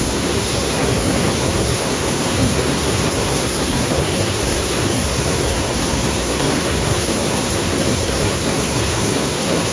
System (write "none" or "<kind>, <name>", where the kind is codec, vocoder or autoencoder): codec, SNAC